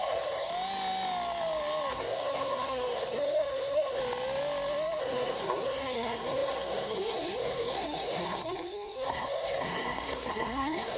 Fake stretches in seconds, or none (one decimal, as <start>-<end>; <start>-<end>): 0.0-0.5; 1.9-4.0; 5.0-11.0